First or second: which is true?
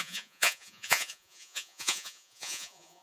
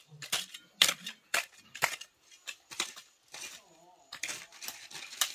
second